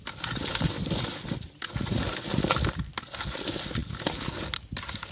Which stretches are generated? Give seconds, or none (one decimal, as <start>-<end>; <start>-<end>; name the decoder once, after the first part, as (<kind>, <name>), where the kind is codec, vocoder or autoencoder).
none